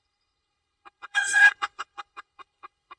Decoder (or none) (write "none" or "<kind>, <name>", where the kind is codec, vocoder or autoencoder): codec, HILCodec